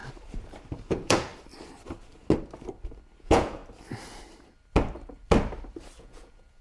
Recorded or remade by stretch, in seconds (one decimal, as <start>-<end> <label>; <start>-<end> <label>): 0.0-0.9 recorded; 0.9-1.3 remade; 1.3-3.2 recorded; 3.2-3.6 remade; 3.6-6.0 recorded; 6.0-6.6 remade